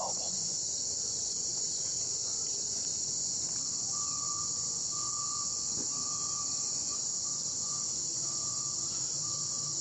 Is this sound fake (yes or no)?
yes